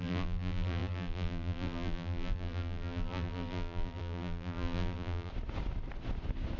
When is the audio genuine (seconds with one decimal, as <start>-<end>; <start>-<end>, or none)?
5.3-6.6